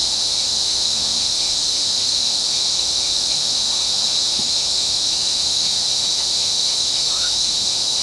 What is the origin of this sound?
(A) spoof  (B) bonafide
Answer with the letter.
A